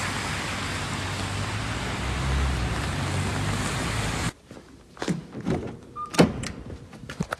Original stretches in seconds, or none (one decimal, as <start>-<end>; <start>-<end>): 0.0-3.3; 5.9-7.4